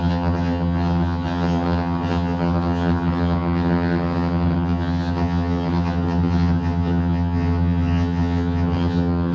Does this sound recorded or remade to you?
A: remade